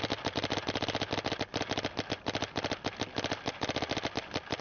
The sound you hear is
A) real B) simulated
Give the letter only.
A